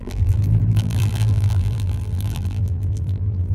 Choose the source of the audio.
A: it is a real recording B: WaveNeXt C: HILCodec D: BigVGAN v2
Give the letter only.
D